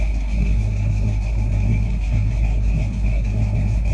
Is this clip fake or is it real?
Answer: fake